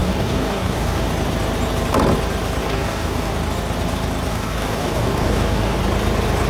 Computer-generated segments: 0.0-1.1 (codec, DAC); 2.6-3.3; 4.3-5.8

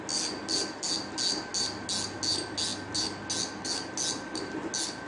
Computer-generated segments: none

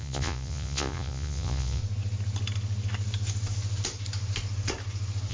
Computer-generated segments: 0.0-1.8 (vocoder, Vocos)

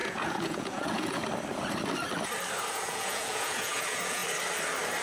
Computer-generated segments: 0.0-1.2 (vocoder, Vocos); 2.7-4.2